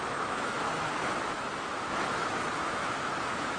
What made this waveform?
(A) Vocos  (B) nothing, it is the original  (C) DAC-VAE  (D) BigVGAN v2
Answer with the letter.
C